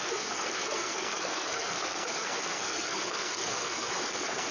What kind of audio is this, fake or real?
fake